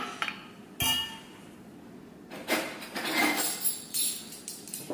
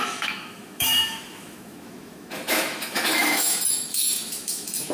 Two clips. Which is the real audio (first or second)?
first